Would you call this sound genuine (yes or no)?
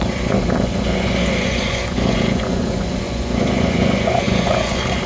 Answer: no